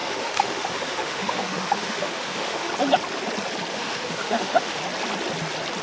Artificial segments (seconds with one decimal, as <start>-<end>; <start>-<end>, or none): 0.0-2.7; 3.7-4.8